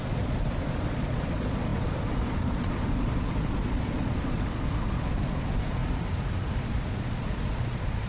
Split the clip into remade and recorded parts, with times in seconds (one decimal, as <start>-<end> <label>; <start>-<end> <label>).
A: 0.0-5.8 remade; 5.8-6.5 recorded; 6.5-8.1 remade